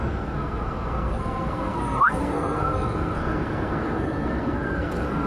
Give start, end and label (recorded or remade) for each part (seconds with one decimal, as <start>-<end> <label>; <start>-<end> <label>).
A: 0.0-5.3 remade